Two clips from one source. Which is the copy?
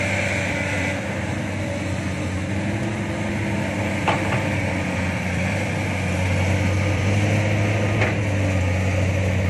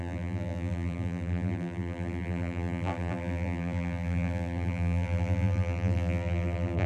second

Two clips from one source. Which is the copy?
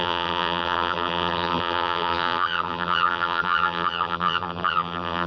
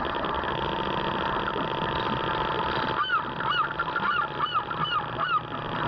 first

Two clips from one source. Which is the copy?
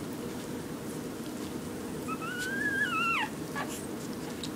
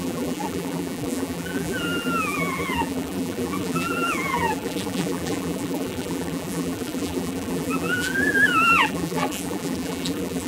second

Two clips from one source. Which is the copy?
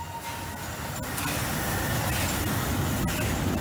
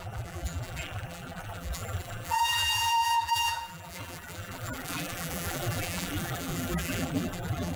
second